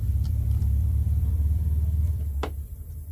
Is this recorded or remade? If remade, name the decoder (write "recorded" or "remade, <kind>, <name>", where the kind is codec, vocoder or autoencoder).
remade, vocoder, BigVGAN v2